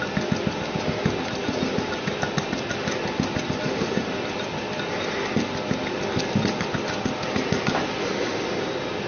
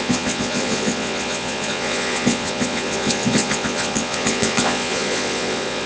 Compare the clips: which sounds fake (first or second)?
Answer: second